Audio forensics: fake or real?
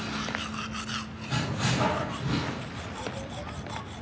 real